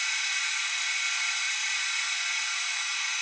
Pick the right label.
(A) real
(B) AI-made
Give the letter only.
A